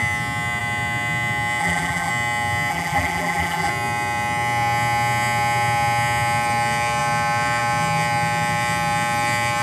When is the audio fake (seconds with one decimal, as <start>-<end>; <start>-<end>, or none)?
1.6-2.1; 2.7-3.7